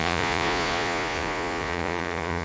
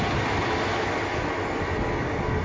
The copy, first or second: first